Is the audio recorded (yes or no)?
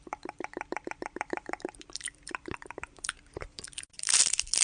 no